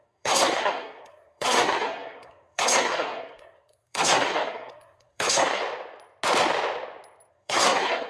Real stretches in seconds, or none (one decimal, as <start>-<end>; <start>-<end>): 5.6-7.3